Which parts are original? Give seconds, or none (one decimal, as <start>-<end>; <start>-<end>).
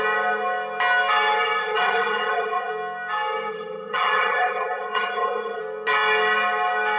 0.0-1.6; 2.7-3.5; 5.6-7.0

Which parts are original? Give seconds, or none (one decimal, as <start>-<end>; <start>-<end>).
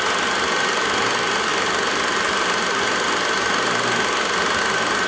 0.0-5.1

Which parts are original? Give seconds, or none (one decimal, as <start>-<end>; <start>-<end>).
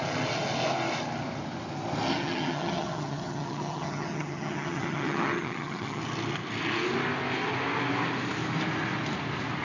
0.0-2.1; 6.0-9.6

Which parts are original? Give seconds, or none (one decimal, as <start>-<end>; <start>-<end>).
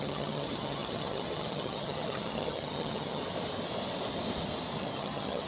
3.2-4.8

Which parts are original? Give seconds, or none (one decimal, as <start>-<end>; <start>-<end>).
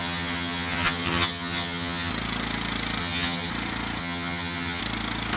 2.1-3.0; 3.5-4.0; 4.8-5.4